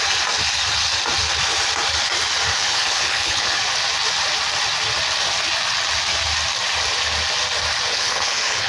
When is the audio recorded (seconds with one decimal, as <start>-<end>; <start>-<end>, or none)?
0.0-2.6; 3.6-7.9